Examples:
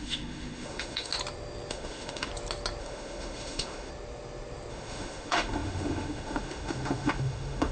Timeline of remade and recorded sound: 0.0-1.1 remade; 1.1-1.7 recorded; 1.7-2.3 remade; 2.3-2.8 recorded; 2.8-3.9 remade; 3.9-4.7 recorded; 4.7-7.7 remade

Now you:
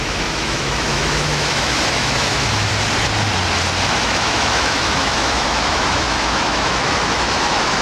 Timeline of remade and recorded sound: 0.0-2.7 remade; 2.7-3.9 recorded; 3.9-7.8 remade

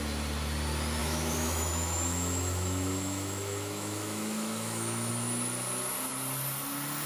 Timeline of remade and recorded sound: 0.0-1.0 recorded; 1.0-5.1 remade; 5.1-7.1 recorded

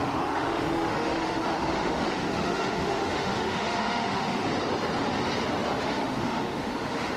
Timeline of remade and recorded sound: 0.0-4.4 remade; 4.4-5.7 recorded; 5.7-7.2 remade